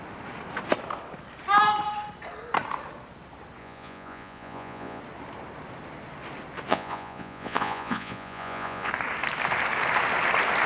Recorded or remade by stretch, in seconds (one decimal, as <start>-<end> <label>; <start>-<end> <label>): 0.0-3.6 recorded; 3.6-5.0 remade; 5.0-6.7 recorded; 6.7-8.9 remade; 8.9-10.7 recorded